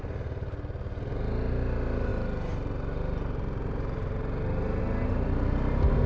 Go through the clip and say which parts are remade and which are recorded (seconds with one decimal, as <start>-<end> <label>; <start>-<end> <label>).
0.0-6.1 recorded